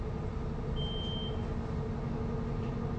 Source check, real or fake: real